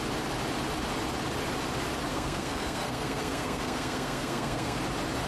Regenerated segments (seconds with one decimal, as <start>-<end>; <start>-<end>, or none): 2.1-4.8